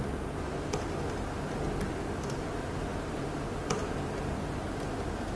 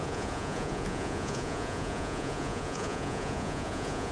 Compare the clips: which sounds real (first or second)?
first